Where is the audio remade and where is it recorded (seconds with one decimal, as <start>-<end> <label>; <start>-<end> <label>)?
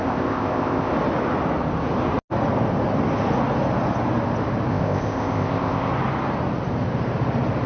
0.0-0.9 remade; 0.9-4.7 recorded; 4.7-5.9 remade; 5.9-7.7 recorded